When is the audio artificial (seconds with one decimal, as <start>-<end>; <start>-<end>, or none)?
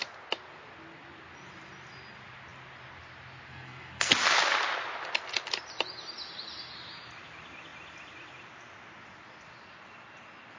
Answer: 3.5-4.1